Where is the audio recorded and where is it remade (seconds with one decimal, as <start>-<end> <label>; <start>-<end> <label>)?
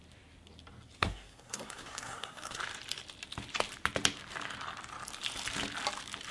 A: 0.0-1.0 recorded; 1.0-2.6 remade; 2.6-6.3 recorded